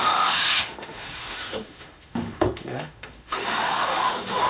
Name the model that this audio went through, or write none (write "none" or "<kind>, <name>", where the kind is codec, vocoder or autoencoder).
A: autoencoder, DAC-VAE